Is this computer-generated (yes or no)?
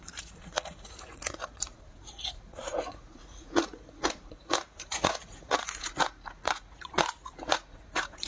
yes